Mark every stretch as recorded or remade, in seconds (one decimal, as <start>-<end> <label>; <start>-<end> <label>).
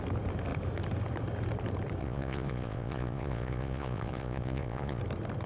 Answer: 0.0-2.0 recorded; 2.0-5.0 remade; 5.0-5.5 recorded